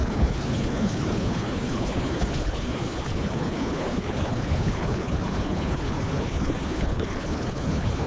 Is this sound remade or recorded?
remade